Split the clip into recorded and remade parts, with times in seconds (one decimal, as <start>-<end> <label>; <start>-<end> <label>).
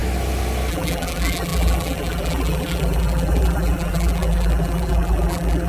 0.0-0.7 recorded; 0.7-5.7 remade